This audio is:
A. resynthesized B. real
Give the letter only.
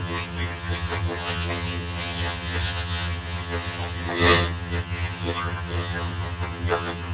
A